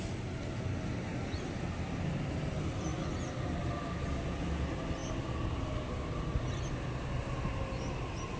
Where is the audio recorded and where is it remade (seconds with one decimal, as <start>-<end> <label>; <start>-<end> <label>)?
0.0-8.4 recorded